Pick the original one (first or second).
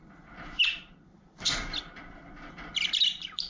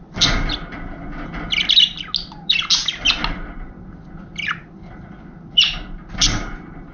second